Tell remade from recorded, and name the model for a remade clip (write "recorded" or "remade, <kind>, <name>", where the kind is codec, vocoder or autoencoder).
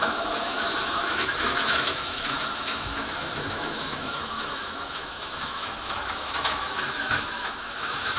remade, autoencoder, DAC-VAE